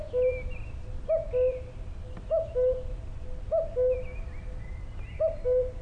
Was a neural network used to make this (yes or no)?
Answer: no